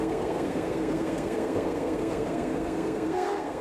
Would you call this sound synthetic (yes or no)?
yes